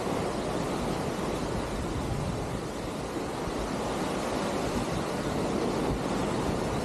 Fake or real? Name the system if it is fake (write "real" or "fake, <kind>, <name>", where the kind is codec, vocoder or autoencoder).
real